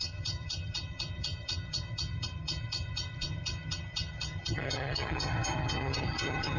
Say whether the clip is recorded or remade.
remade